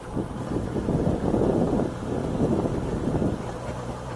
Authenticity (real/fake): real